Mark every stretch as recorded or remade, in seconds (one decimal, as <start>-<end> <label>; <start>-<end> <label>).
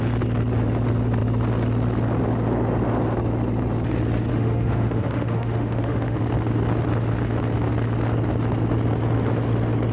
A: 0.0-4.3 recorded; 4.3-6.2 remade; 6.2-9.9 recorded